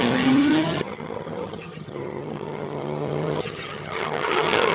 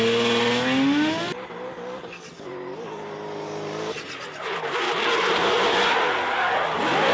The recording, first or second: second